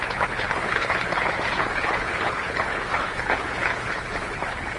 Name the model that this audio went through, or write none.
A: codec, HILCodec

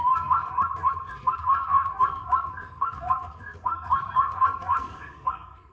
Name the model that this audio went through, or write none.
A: codec, SNAC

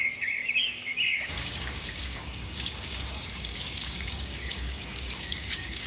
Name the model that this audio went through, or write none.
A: codec, DAC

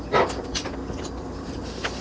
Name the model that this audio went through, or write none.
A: none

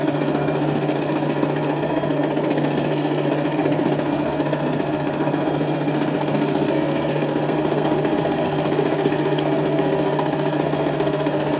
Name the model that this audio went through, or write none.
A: codec, SNAC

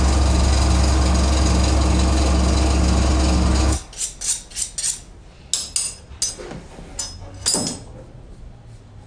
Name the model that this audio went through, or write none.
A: none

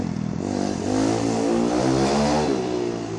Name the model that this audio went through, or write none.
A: none